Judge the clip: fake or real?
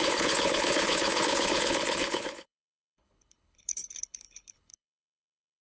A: fake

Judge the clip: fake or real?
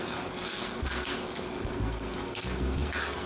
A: fake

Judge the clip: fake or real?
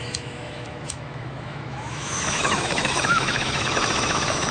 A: fake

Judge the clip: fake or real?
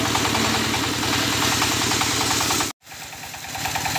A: real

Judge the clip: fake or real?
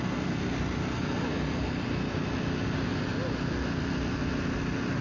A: real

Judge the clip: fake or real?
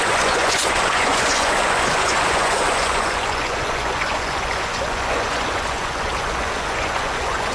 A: fake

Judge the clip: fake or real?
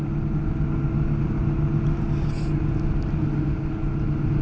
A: real